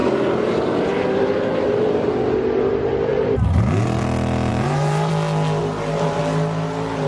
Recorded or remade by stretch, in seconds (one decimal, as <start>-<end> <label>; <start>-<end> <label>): 0.0-2.1 remade; 2.1-3.1 recorded; 3.1-3.6 remade; 3.6-4.5 recorded; 4.5-5.1 remade; 5.1-5.6 recorded; 5.6-6.2 remade; 6.2-7.1 recorded